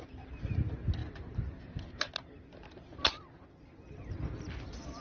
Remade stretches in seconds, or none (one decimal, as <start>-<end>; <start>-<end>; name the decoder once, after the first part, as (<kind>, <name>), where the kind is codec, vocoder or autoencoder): none